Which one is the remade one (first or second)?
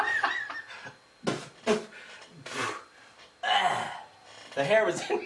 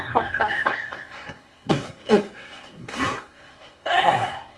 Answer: second